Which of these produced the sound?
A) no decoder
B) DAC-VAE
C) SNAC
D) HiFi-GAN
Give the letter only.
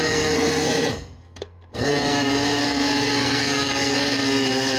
C